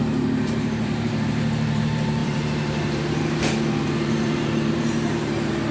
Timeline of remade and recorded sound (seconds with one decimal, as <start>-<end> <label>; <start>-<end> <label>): 0.0-5.7 remade

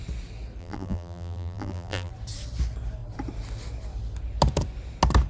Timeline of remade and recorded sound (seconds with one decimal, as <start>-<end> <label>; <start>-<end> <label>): 0.0-0.6 recorded; 0.6-2.1 remade; 2.1-5.3 recorded

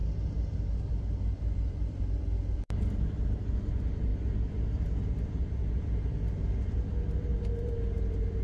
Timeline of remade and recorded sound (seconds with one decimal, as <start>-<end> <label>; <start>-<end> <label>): 0.0-8.4 remade